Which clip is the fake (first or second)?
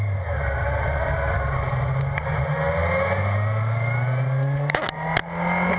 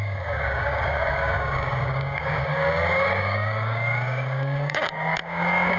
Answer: second